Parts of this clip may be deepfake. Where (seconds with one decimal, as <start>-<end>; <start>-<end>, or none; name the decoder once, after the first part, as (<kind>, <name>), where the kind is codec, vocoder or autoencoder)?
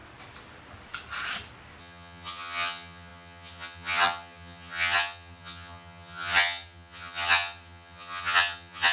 1.8-8.9 (vocoder, HiFi-GAN)